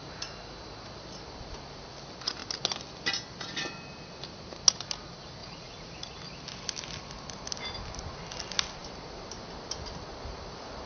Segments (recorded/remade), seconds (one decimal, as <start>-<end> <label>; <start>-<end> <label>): 0.0-5.4 recorded; 5.4-6.2 remade; 6.2-10.9 recorded